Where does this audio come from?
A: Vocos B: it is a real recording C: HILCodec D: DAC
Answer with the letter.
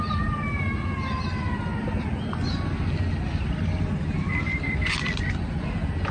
B